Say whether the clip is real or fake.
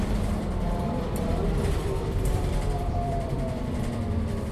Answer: fake